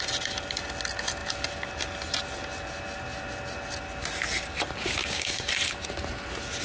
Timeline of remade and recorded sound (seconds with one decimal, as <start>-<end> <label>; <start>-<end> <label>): 0.0-5.0 recorded; 5.0-5.5 remade; 5.5-6.6 recorded